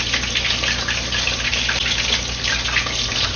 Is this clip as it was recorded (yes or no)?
yes